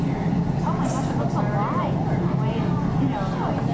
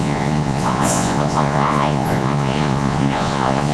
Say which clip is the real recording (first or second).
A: first